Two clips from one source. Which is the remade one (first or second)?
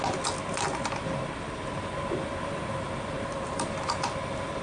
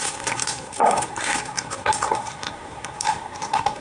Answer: second